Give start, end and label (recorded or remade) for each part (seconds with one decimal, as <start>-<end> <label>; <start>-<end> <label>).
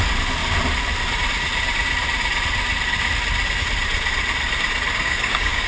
0.0-4.9 recorded; 4.9-5.7 remade